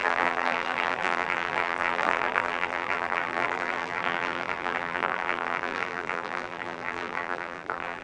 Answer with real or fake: fake